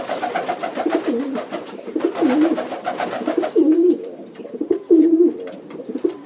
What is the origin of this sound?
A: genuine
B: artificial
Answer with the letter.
B